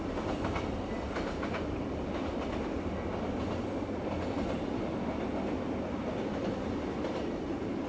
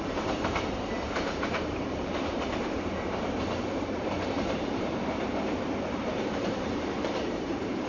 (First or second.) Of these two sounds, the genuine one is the first